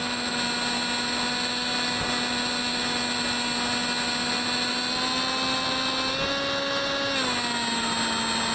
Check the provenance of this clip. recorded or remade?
recorded